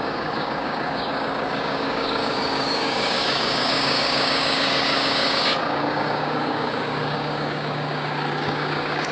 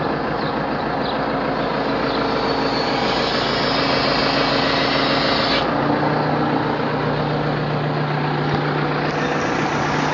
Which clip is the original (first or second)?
second